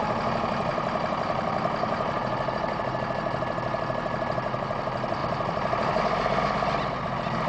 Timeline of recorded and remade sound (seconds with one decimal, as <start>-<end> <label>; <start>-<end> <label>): 0.0-0.7 recorded; 0.7-2.9 remade; 2.9-5.2 recorded; 5.2-6.0 remade; 6.0-7.5 recorded